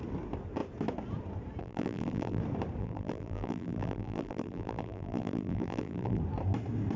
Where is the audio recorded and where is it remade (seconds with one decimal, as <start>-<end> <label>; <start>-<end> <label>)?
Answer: 0.0-1.6 recorded; 1.6-2.4 remade; 2.4-2.8 recorded; 2.8-6.2 remade; 6.2-7.0 recorded